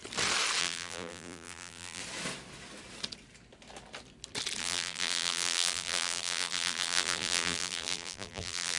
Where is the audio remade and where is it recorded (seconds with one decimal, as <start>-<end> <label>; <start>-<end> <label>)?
0.0-0.6 recorded; 0.6-2.0 remade; 2.0-4.6 recorded; 4.6-8.8 remade